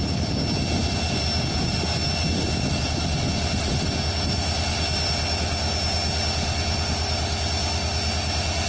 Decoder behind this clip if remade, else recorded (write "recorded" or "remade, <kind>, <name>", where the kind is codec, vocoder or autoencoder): recorded